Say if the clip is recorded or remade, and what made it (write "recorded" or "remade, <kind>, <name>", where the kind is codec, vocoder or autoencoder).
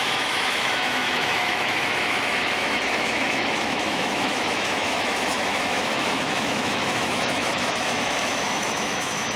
remade, autoencoder, DAC-VAE